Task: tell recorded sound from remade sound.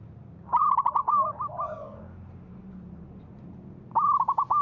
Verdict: recorded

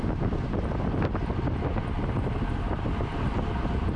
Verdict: recorded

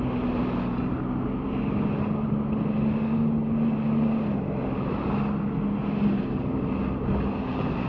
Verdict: recorded